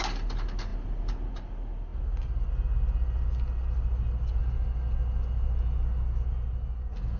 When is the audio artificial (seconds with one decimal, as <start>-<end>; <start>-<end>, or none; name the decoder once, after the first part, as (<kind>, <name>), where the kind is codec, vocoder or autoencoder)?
none